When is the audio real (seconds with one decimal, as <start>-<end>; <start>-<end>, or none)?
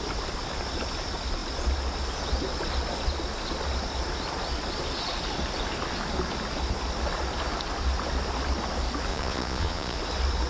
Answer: 0.0-9.1; 10.0-10.5